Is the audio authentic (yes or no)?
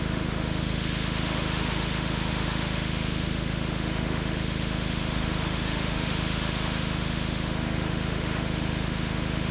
no